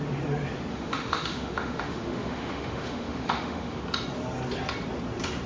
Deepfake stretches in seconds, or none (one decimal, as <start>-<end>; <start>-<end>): 0.7-3.8